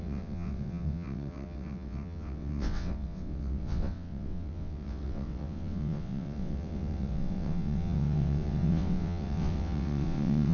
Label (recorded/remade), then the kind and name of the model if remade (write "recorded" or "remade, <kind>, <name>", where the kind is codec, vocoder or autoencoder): remade, vocoder, WaveNeXt